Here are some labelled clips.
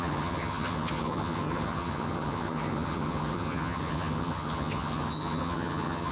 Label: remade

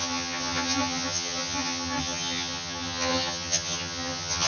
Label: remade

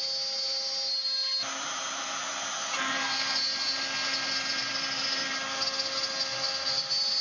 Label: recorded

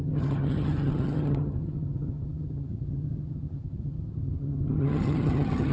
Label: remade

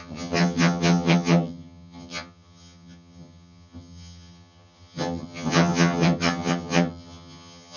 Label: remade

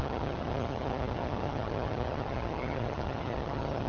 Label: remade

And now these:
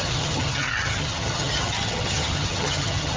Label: remade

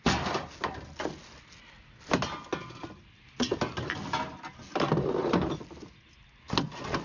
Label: recorded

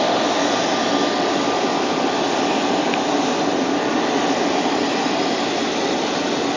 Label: recorded